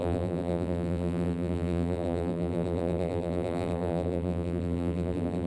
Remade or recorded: remade